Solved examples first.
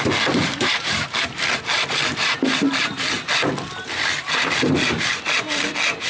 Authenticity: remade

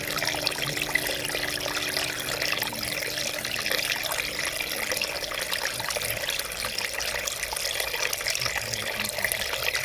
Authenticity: recorded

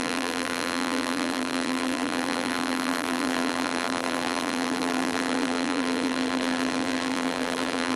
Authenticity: remade